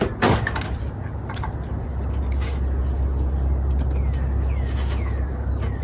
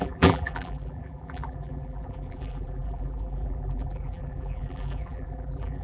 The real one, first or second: first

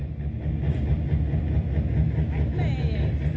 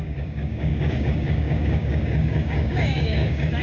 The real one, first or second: first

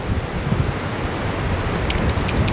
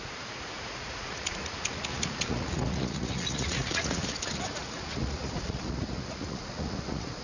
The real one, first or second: first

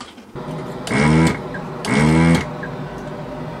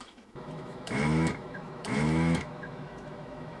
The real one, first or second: first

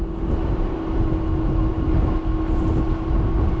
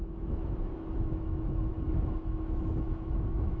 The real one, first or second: first